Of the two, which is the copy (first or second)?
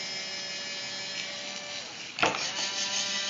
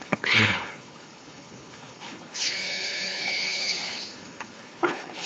second